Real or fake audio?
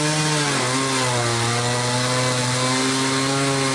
real